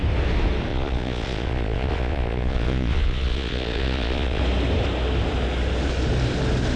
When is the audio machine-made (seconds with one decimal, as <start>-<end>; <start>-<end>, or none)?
0.7-4.4